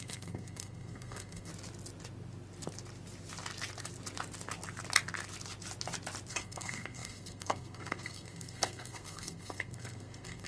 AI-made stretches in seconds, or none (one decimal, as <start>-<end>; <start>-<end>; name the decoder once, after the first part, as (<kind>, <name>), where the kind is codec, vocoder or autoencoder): 0.0-1.5 (codec, SNAC); 6.3-10.5